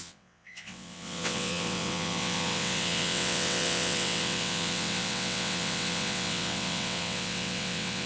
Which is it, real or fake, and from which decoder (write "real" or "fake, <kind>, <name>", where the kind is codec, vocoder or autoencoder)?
fake, vocoder, WaveNeXt